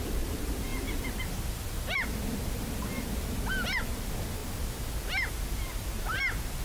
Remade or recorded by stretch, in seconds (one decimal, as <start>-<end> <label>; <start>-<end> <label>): 0.0-6.6 recorded